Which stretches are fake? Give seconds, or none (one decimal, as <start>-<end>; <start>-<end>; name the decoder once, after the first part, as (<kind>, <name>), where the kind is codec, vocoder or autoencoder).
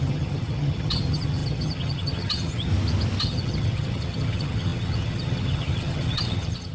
0.0-2.7 (vocoder, HiFi-GAN); 3.2-6.7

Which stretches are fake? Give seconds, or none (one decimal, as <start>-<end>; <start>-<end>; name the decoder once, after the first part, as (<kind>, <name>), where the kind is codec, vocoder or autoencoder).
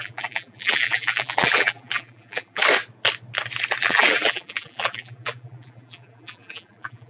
0.0-2.6 (vocoder, BigVGAN v2); 3.8-7.1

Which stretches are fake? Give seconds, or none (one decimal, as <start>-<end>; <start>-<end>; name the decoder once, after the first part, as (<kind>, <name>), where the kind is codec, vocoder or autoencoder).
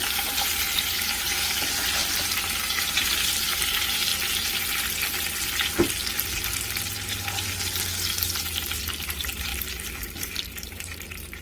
0.0-2.0 (vocoder, BigVGAN v2); 2.8-4.1; 8.8-11.4